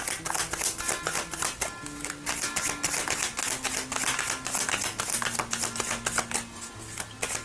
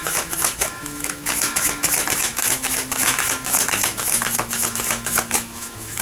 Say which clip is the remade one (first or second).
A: second